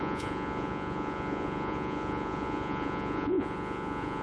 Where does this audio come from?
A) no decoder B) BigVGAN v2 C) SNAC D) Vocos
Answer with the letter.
D